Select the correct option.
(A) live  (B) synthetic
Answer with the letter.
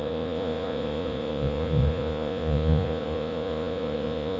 B